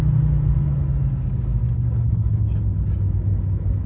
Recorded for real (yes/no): yes